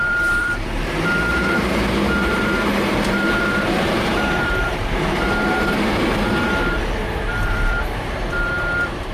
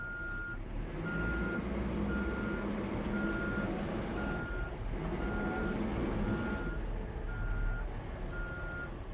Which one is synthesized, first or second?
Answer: first